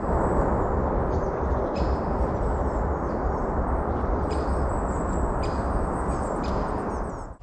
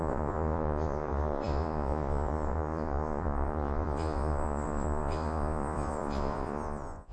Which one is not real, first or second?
second